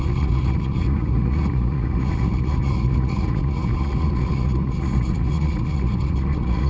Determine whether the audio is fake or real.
fake